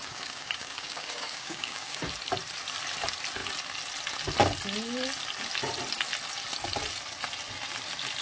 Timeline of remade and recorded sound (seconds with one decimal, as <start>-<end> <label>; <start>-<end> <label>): 0.0-2.0 remade; 2.0-8.2 recorded